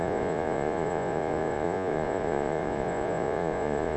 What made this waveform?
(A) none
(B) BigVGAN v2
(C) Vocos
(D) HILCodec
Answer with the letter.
C